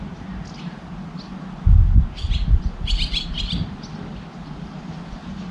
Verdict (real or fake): real